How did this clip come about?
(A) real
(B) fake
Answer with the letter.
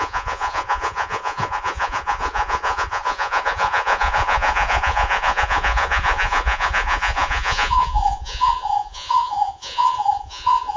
B